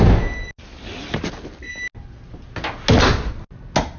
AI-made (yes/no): no